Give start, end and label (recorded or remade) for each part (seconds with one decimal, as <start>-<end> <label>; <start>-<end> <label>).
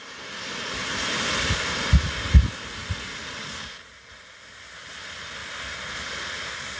0.0-2.3 remade; 2.3-5.4 recorded; 5.4-6.8 remade